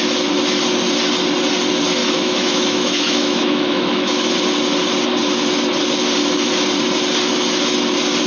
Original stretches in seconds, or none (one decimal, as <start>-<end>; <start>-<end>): 0.0-2.0; 4.2-8.3